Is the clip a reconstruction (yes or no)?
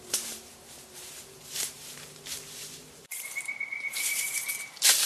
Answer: yes